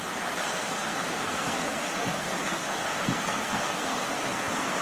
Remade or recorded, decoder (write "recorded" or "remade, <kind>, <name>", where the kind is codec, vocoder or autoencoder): remade, codec, SNAC